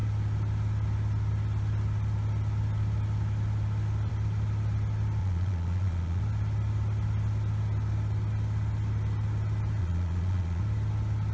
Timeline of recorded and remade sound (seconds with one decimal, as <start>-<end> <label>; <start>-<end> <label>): 0.0-5.2 recorded; 5.2-6.2 remade; 6.2-9.8 recorded; 9.8-10.6 remade; 10.6-11.3 recorded